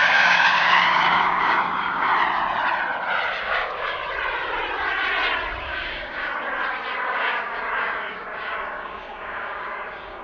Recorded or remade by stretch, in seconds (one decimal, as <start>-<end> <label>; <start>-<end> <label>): 0.0-2.1 remade; 2.1-3.4 recorded; 3.4-4.0 remade; 4.0-5.6 recorded; 5.6-6.3 remade; 6.3-7.1 recorded; 7.1-10.2 remade